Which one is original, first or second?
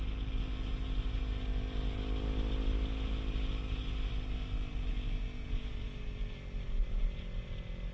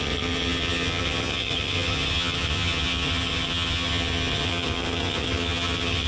first